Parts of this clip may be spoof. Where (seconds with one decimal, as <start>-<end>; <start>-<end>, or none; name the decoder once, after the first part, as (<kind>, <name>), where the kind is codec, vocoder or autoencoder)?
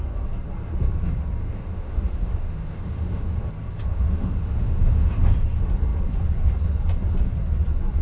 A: 1.4-3.5 (autoencoder, DAC-VAE); 3.9-5.1